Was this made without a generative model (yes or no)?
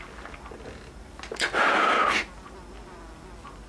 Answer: yes